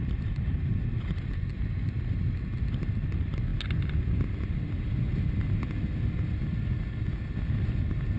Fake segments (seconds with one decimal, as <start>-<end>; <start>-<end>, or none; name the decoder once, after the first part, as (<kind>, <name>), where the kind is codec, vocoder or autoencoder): 0.0-1.5 (vocoder, BigVGAN v2)